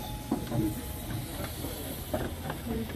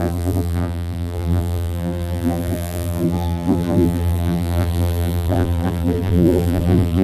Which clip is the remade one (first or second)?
second